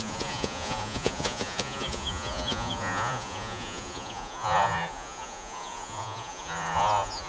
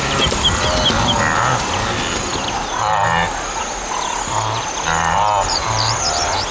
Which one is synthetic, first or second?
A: first